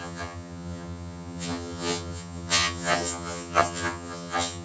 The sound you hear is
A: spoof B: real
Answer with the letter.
A